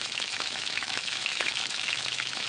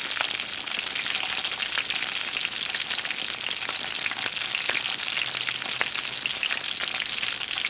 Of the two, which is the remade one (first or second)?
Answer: first